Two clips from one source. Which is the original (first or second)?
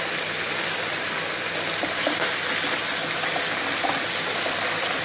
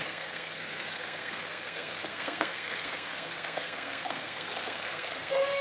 first